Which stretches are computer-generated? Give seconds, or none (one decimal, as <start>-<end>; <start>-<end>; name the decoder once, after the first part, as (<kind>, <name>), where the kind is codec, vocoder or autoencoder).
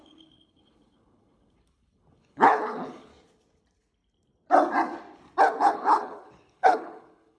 0.0-3.1 (codec, HILCodec); 5.6-7.4